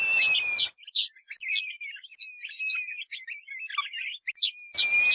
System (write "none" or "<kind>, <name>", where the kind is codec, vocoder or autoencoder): none